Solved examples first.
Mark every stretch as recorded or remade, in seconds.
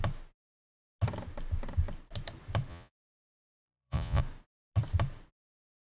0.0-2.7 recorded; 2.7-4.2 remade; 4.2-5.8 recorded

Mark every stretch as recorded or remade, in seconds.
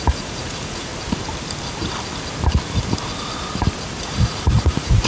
0.0-0.9 remade; 0.9-4.0 recorded; 4.0-5.1 remade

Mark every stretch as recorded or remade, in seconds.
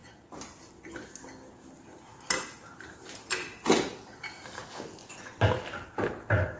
0.0-5.0 recorded; 5.0-5.5 remade; 5.5-6.6 recorded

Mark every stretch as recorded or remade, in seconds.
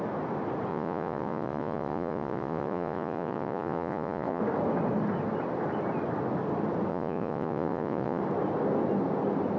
0.0-0.7 recorded; 0.7-4.4 remade; 4.4-6.9 recorded; 6.9-8.2 remade; 8.2-9.6 recorded